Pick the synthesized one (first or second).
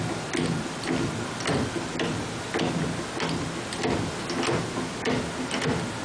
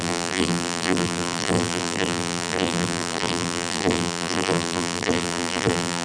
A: second